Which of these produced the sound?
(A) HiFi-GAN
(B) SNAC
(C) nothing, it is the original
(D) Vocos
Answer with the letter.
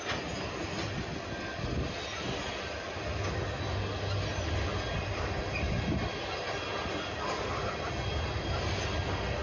C